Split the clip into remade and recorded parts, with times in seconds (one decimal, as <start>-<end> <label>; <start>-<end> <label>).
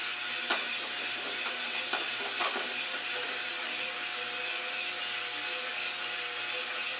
0.0-0.5 recorded; 0.5-3.5 remade; 3.5-7.0 recorded